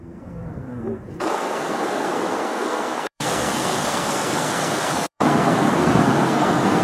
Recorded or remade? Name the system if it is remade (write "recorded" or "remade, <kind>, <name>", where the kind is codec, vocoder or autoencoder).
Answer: remade, codec, SNAC